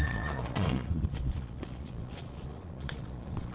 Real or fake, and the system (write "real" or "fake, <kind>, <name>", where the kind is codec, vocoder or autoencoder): fake, vocoder, Vocos